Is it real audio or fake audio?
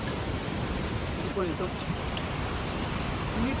fake